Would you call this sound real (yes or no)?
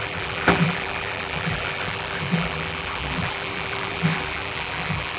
no